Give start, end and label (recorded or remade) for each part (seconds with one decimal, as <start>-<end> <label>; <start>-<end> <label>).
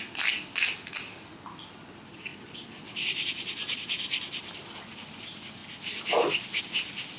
0.0-7.2 recorded